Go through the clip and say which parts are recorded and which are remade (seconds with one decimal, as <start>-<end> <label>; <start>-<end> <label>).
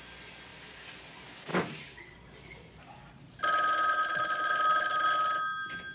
0.0-0.5 recorded; 0.5-1.1 remade; 1.1-1.5 recorded; 1.5-3.4 remade; 3.4-4.1 recorded; 4.1-5.0 remade; 5.0-5.9 recorded